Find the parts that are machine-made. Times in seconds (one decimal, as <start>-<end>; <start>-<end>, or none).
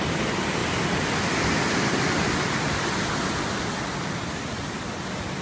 none